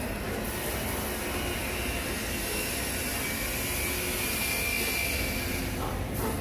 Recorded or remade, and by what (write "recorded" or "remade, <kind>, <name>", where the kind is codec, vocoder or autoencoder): recorded